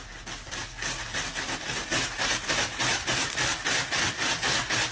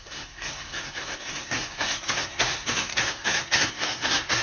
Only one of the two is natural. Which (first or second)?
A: first